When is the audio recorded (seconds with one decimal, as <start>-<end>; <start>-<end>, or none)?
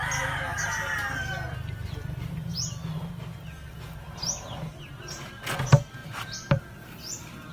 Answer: 0.0-6.0; 6.6-7.5